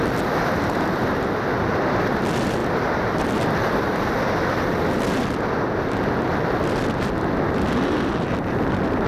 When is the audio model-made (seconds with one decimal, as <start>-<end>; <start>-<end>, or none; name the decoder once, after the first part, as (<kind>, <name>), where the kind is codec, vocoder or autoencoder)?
2.6-4.0 (vocoder, BigVGAN v2)